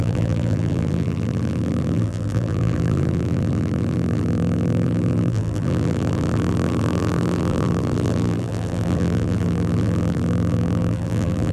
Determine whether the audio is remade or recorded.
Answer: remade